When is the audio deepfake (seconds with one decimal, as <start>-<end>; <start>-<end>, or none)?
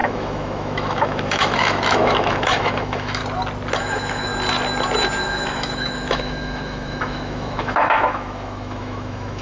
0.0-3.2; 3.8-4.3; 5.2-9.4